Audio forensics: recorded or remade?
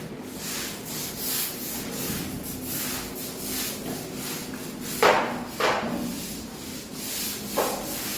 recorded